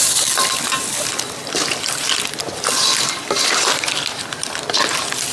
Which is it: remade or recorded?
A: remade